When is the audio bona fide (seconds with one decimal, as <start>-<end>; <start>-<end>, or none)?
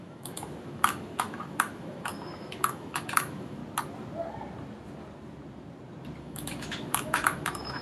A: 3.6-6.2